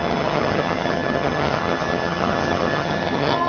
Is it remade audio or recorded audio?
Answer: remade